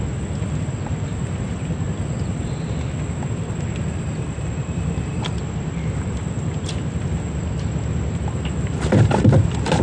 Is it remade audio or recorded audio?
recorded